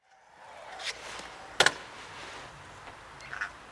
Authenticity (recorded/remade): recorded